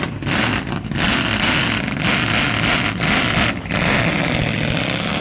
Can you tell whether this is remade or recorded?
recorded